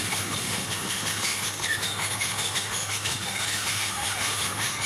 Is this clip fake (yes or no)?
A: yes